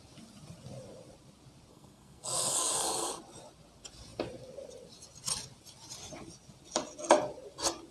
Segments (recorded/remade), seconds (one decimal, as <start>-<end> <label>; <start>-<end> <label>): 0.0-1.7 recorded; 1.7-3.2 remade; 3.2-7.9 recorded